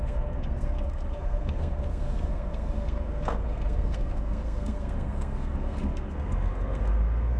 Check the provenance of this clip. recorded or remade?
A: remade